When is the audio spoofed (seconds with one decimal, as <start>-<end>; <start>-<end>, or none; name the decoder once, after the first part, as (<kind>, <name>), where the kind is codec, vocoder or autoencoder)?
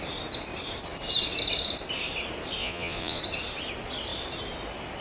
2.6-3.2 (vocoder, Vocos)